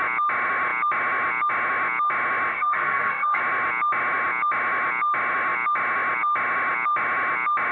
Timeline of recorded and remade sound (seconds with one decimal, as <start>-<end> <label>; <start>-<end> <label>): 0.0-2.5 recorded; 2.5-3.4 remade; 3.4-7.7 recorded